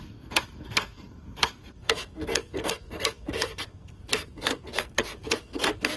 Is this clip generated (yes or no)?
yes